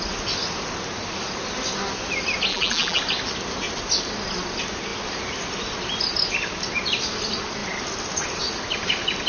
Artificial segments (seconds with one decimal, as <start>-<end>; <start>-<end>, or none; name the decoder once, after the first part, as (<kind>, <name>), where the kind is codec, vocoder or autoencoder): 2.5-3.0 (vocoder, BigVGAN v2)

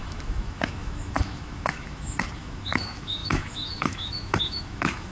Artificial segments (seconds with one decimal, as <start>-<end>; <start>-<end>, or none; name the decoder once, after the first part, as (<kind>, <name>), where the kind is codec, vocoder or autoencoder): 0.0-5.1 (autoencoder, DAC-VAE)

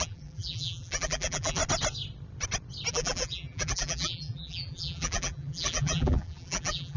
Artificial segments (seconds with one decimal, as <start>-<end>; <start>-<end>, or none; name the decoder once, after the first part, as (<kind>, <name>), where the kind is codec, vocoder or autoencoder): 0.0-1.6 (vocoder, BigVGAN v2); 2.9-7.0

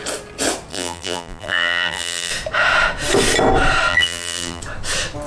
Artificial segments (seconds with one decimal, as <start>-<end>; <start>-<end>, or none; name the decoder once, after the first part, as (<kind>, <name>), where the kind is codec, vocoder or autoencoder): 0.7-2.3 (vocoder, BigVGAN v2); 3.9-4.6

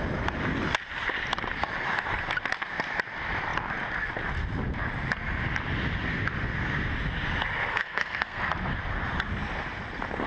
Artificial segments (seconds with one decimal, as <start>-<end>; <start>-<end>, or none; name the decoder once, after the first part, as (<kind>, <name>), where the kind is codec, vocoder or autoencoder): 7.7-8.4 (codec, SNAC)